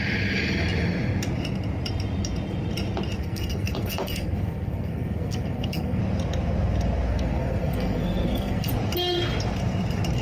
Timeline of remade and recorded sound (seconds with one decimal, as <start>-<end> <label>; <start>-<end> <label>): 0.0-3.2 recorded; 3.2-6.0 remade; 6.0-7.1 recorded; 7.1-8.7 remade; 8.7-10.2 recorded